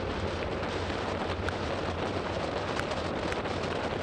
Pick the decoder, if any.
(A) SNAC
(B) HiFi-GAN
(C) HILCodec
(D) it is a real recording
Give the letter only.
D